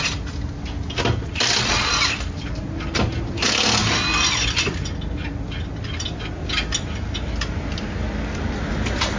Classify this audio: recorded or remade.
recorded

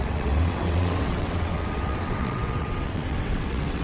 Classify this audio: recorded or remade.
remade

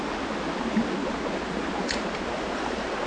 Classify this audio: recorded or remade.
recorded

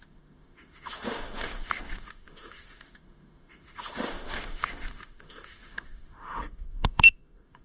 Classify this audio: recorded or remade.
remade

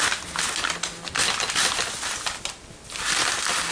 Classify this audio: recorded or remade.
recorded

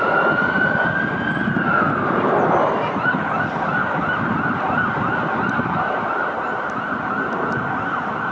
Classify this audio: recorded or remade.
recorded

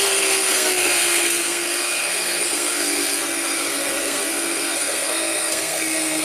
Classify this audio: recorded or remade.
remade